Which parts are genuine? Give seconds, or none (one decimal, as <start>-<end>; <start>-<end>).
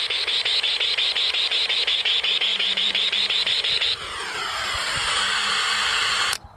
0.0-2.5